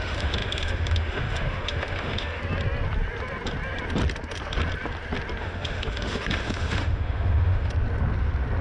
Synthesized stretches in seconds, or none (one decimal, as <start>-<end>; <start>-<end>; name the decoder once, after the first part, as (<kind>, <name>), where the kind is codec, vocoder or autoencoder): 0.0-2.4 (autoencoder, DAC-VAE); 5.4-7.7